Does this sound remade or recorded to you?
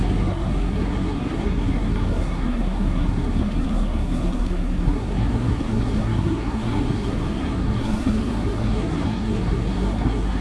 remade